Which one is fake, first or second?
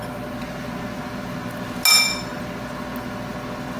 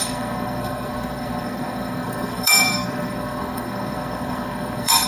second